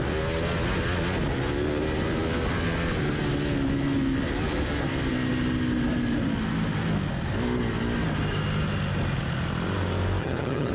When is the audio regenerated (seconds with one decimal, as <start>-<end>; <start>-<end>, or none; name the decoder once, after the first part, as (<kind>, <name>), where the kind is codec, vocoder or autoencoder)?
10.2-10.7 (vocoder, HiFi-GAN)